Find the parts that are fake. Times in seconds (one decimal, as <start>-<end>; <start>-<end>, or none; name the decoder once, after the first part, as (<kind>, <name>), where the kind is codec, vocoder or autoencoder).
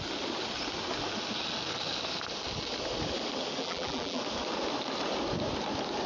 3.6-4.2 (vocoder, BigVGAN v2)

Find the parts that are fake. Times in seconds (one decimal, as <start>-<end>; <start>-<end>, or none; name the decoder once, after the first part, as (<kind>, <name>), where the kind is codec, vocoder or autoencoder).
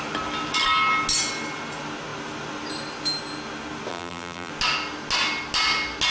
3.9-4.5 (vocoder, BigVGAN v2)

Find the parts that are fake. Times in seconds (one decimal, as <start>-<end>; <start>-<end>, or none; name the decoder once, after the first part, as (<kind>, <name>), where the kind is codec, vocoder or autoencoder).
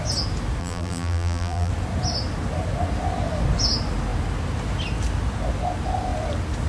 0.6-1.7 (vocoder, BigVGAN v2)